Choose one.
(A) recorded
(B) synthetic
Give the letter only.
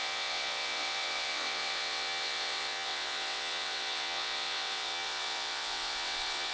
B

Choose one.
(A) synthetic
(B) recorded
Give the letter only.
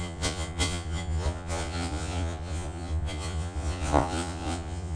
A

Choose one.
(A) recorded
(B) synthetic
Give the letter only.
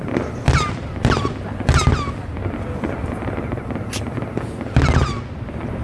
A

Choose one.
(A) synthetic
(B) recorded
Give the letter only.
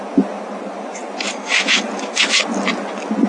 B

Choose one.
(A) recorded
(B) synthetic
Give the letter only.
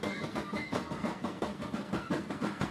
B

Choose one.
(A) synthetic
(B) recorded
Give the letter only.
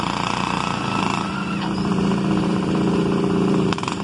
A